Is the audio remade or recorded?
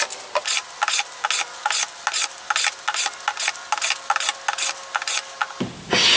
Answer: recorded